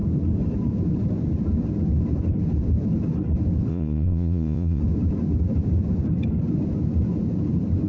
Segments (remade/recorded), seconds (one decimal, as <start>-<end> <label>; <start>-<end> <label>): 0.0-3.7 recorded; 3.7-4.8 remade; 4.8-7.9 recorded